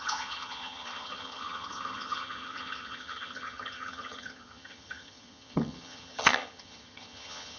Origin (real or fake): fake